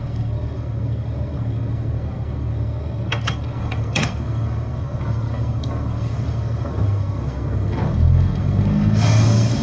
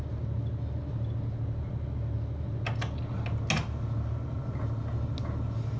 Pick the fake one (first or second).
first